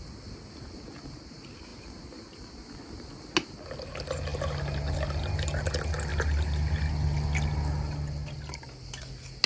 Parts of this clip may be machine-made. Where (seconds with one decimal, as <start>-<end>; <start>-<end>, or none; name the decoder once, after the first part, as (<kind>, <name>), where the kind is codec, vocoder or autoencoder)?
none